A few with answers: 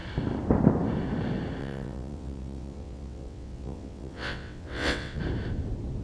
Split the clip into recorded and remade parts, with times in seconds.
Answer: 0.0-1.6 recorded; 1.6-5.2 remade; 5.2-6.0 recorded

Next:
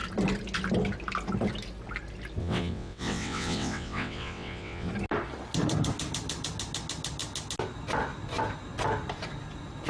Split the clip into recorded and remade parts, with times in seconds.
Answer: 0.0-2.4 recorded; 2.4-4.9 remade; 4.9-9.9 recorded